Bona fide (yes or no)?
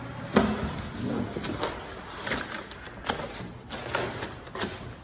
yes